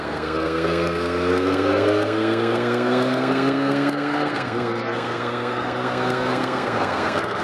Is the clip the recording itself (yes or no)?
no